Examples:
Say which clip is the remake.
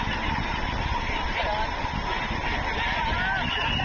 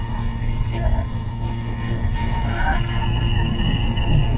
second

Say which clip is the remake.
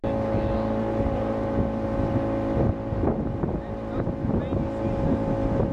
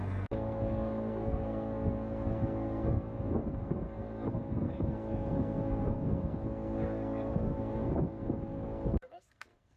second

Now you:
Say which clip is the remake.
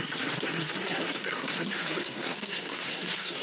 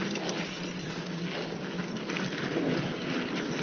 first